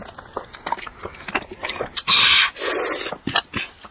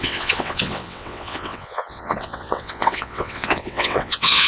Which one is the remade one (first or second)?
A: second